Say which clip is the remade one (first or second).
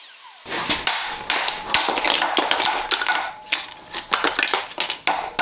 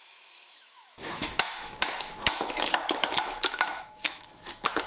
second